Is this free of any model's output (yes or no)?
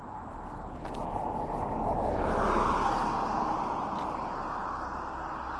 yes